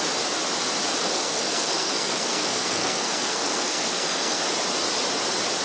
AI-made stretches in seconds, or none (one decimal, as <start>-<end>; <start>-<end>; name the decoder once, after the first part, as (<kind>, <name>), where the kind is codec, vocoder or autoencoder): 1.0-4.4 (codec, SNAC)